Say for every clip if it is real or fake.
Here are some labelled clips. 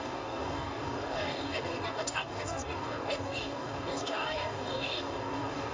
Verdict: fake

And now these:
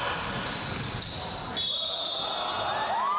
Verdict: real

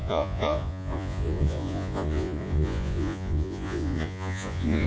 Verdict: fake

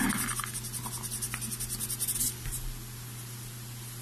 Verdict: real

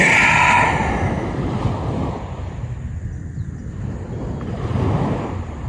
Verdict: real